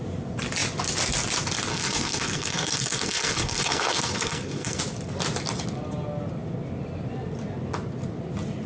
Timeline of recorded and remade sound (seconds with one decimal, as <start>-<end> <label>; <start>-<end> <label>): 0.0-1.7 recorded; 1.7-4.8 remade; 4.8-8.7 recorded